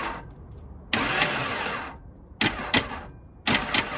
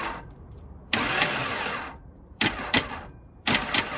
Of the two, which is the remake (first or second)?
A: second